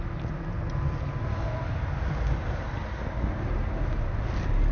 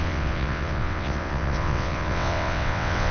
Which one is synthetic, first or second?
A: second